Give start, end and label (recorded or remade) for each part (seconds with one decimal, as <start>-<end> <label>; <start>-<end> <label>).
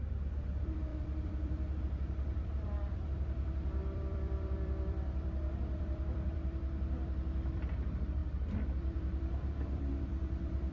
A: 0.0-10.7 remade